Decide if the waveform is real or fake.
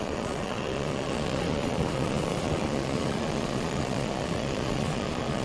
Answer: fake